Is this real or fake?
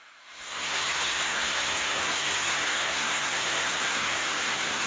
fake